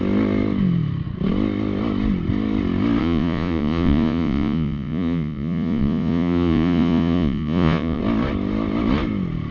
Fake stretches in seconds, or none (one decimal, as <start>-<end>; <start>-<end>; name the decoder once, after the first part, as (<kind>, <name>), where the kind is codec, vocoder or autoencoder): 3.0-8.0 (vocoder, Vocos)